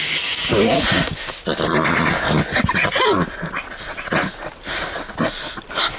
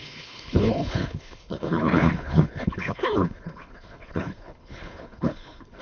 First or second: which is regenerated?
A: second